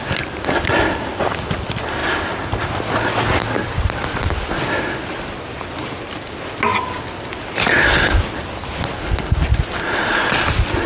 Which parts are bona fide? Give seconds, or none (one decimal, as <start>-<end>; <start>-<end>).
0.0-10.9